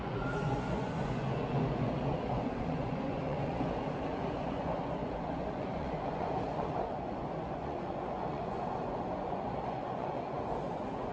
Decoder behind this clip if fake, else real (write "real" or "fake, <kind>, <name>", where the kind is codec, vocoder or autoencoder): fake, vocoder, Vocos